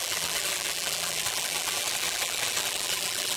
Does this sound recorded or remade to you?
remade